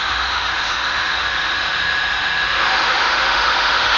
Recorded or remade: remade